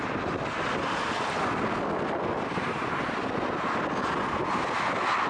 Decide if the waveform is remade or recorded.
recorded